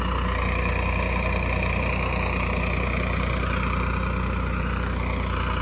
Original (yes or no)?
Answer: yes